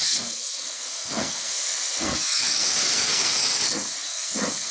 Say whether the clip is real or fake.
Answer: fake